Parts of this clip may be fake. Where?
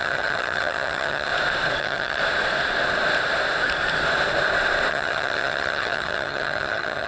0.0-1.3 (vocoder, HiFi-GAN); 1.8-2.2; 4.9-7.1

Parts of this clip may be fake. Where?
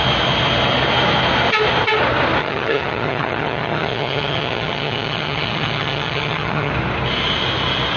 2.4-6.7 (vocoder, HiFi-GAN)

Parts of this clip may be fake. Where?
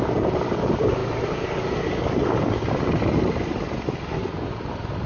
none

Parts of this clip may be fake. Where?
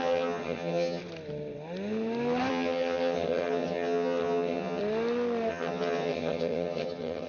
0.0-1.0 (vocoder, HiFi-GAN); 2.5-4.8; 5.5-7.3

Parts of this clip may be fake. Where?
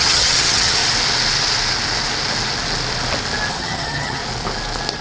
0.0-0.8 (vocoder, HiFi-GAN); 3.5-4.2